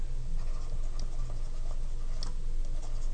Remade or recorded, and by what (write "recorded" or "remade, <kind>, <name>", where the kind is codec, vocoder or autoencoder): recorded